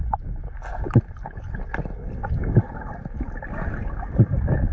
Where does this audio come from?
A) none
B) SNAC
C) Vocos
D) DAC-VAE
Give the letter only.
A